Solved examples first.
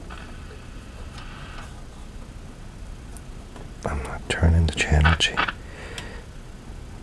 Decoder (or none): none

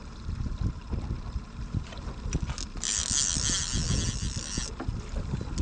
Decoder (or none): none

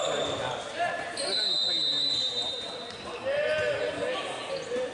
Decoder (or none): none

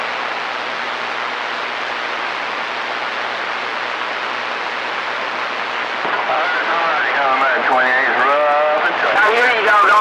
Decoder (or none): none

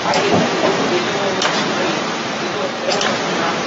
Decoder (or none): vocoder, BigVGAN v2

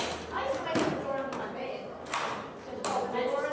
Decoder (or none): none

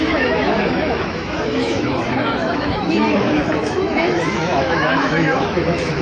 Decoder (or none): autoencoder, DAC-VAE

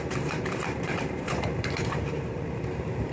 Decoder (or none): vocoder, BigVGAN v2